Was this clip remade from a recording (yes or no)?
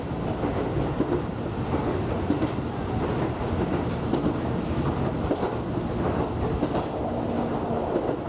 no